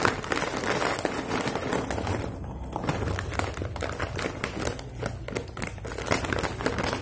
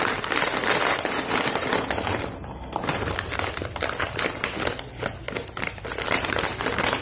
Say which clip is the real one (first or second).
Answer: first